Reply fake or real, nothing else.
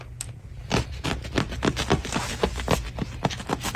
real